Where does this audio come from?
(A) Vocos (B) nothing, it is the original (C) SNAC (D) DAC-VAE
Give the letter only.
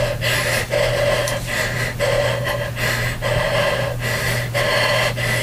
B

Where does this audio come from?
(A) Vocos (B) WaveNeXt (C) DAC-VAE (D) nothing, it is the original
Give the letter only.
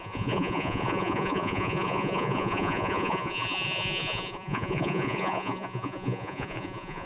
A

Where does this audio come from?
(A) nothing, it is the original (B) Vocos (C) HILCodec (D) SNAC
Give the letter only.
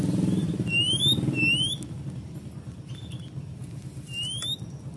A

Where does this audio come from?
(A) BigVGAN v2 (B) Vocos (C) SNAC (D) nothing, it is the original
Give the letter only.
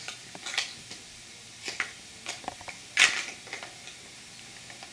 D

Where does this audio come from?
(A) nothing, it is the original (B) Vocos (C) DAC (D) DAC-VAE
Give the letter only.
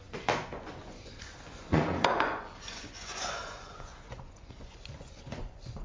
B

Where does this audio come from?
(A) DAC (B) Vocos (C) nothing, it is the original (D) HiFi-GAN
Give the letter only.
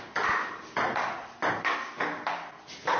C